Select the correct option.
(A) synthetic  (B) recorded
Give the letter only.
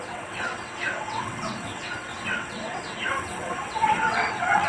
A